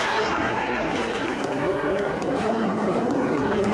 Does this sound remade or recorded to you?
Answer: remade